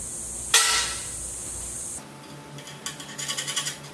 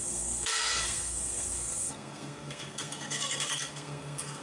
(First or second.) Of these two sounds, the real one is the first